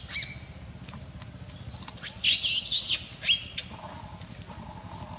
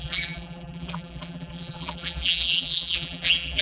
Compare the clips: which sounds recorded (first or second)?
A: first